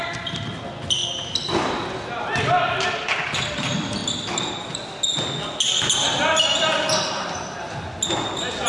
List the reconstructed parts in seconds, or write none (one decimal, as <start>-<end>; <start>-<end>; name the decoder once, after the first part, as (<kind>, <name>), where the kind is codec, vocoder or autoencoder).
none